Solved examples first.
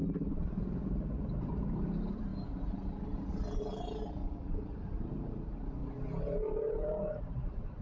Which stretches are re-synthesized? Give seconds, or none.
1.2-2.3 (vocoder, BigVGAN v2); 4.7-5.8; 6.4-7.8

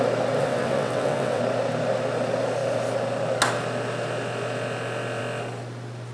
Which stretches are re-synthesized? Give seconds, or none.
0.4-1.4 (vocoder, WaveNeXt)

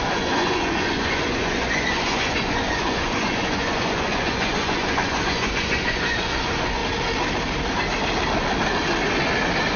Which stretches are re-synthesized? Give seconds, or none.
0.0-6.8 (vocoder, Vocos)

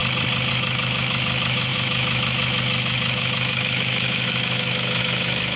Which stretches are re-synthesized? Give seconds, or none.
0.5-5.6 (autoencoder, DAC-VAE)

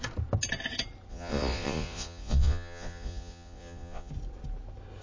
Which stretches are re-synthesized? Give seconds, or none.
1.1-4.1 (vocoder, Vocos)

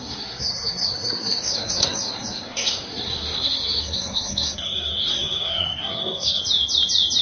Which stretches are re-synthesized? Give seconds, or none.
0.0-6.4 (codec, SNAC)